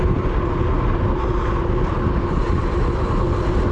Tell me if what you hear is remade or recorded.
recorded